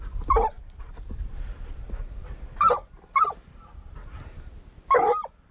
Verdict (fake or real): real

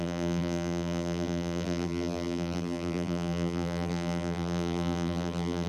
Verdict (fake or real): fake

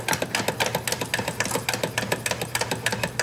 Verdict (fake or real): real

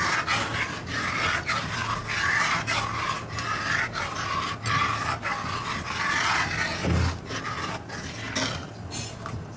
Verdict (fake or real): real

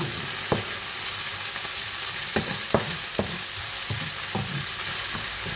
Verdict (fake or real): real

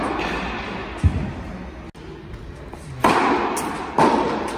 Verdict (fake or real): real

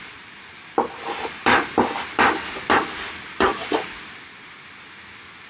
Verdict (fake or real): real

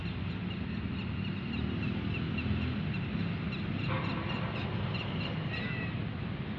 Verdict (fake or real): real